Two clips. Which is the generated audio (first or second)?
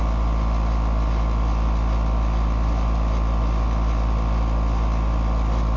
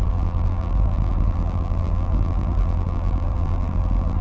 second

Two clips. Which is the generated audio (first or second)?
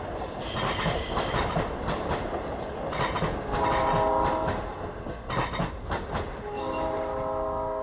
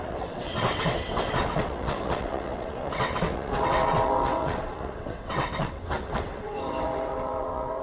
second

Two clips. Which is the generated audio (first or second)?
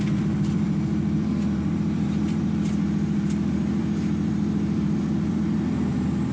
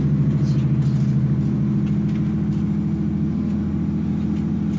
first